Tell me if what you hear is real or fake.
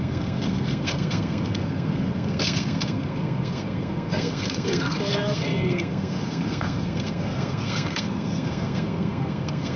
fake